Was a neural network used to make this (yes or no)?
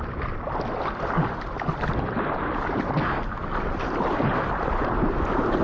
no